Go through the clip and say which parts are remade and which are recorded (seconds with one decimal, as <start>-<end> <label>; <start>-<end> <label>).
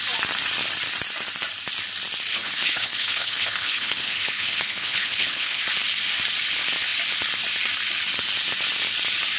0.0-2.3 recorded; 2.3-5.6 remade; 5.6-9.4 recorded